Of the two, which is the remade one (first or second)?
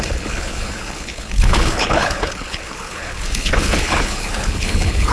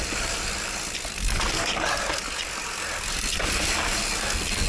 first